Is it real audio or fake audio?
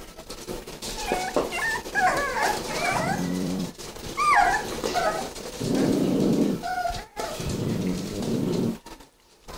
fake